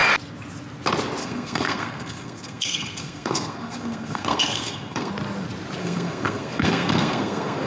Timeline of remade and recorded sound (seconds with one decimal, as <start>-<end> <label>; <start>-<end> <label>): 0.0-1.2 recorded; 1.2-5.1 remade; 5.1-5.8 recorded; 5.8-7.7 remade